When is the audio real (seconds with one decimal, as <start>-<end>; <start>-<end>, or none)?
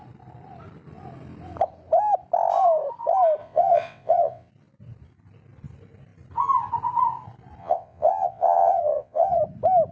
0.0-3.4; 4.5-7.6; 9.4-9.9